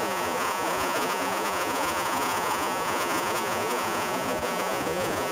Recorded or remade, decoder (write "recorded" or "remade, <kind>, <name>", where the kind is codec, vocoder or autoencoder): remade, vocoder, Vocos